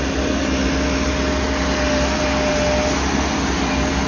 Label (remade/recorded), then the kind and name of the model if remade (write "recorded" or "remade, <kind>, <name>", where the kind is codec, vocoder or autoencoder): recorded